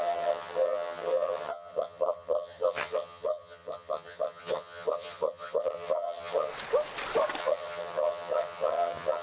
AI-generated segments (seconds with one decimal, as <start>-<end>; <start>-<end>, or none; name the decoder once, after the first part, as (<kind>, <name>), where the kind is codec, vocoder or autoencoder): 0.0-6.5 (vocoder, HiFi-GAN); 7.4-9.2